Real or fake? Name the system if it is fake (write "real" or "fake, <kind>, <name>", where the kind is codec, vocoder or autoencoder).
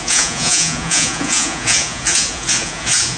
fake, vocoder, Vocos